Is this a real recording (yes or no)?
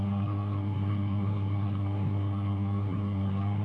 no